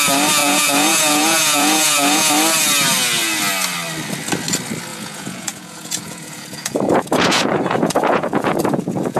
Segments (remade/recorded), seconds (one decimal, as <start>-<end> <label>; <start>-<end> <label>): 0.0-0.4 recorded; 0.4-2.3 remade; 2.3-4.9 recorded; 4.9-9.2 remade